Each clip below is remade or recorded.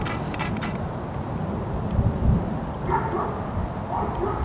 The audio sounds recorded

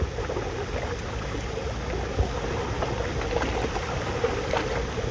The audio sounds recorded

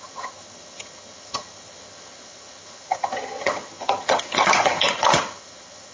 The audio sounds remade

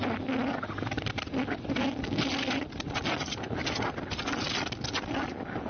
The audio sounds recorded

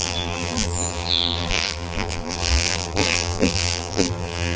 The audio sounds remade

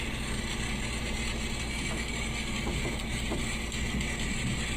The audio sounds recorded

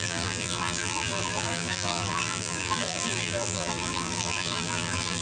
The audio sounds remade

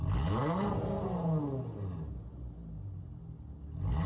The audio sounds recorded